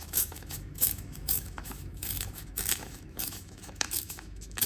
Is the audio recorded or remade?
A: remade